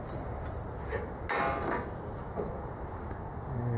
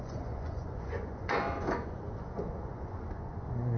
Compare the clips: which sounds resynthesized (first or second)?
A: second